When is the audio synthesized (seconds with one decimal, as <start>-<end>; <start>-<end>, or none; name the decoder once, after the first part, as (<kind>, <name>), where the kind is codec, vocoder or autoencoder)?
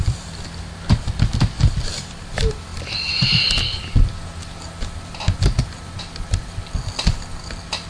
none